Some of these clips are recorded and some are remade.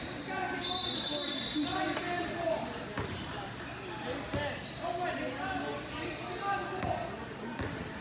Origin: recorded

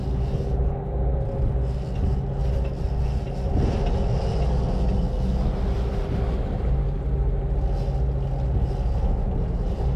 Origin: recorded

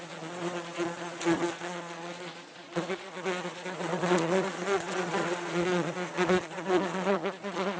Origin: remade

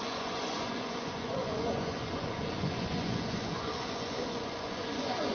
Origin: remade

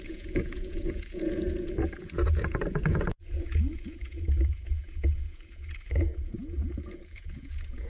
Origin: remade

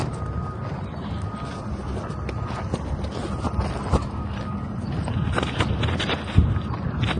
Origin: recorded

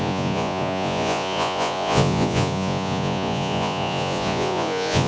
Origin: remade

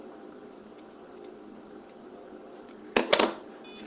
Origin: recorded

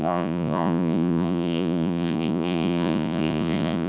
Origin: remade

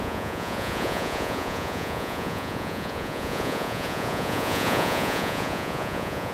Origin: remade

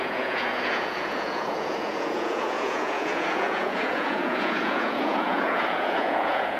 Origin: remade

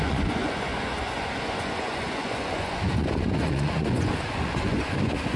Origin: remade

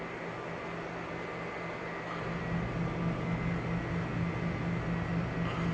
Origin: recorded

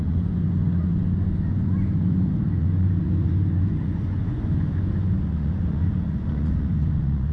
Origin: remade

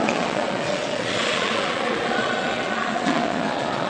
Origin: remade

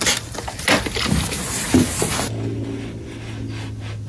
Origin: recorded